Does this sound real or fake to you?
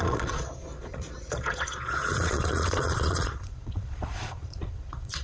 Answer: fake